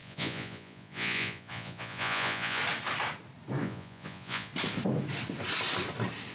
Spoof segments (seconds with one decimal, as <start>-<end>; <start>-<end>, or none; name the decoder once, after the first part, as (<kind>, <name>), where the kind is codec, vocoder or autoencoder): 0.0-2.6 (vocoder, Vocos); 3.6-4.5